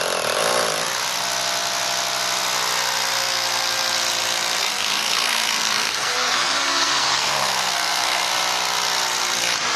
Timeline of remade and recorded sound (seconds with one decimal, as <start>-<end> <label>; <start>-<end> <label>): 0.0-4.6 recorded; 4.6-8.3 remade; 8.3-9.8 recorded